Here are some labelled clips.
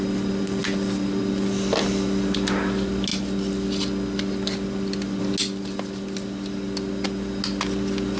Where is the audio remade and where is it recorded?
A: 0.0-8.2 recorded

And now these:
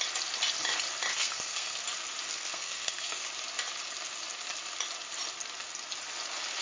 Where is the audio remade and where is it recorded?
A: 0.0-1.1 recorded; 1.1-1.8 remade; 1.8-2.3 recorded; 2.3-3.2 remade; 3.2-6.6 recorded

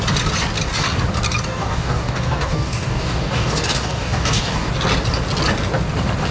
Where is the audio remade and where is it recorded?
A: 0.0-1.5 recorded; 1.5-4.7 remade; 4.7-6.3 recorded

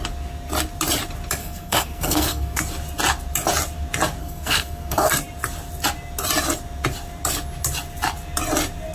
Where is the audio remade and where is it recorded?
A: 0.0-1.4 recorded; 1.4-2.6 remade; 2.6-4.2 recorded; 4.2-5.1 remade; 5.1-8.9 recorded